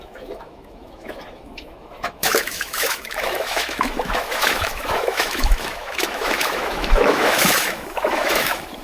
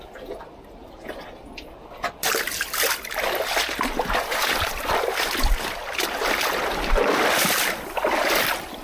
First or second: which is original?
second